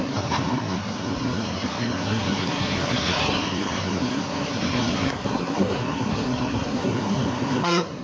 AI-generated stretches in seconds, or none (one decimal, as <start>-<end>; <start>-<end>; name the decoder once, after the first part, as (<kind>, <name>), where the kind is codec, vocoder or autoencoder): 0.0-8.0 (codec, SNAC)